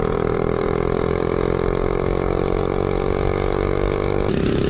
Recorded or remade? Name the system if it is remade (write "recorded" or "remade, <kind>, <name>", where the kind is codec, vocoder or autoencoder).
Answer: remade, vocoder, BigVGAN v2